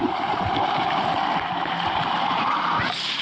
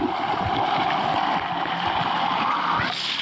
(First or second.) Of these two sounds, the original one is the second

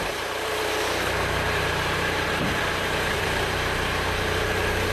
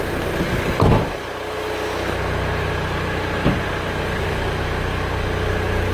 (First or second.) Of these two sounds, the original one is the second